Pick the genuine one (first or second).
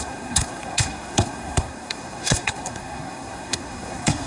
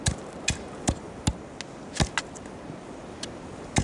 second